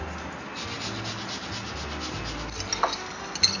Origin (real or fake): real